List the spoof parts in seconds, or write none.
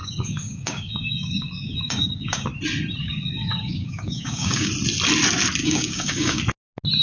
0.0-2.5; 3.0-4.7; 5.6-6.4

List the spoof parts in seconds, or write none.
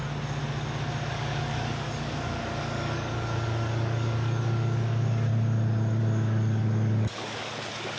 1.1-5.3; 6.0-8.0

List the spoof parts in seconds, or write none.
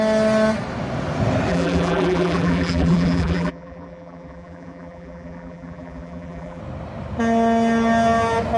1.5-6.6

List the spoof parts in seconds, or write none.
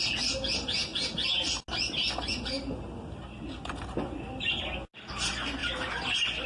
none